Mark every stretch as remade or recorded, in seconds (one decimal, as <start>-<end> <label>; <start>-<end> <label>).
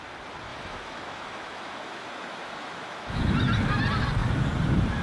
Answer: 0.0-0.5 recorded; 0.5-3.2 remade; 3.2-5.0 recorded